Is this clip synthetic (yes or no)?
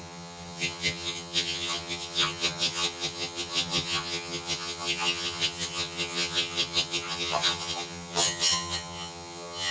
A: yes